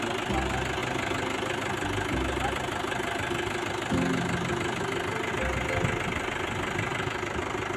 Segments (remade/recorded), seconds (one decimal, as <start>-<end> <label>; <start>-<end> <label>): 0.0-7.8 recorded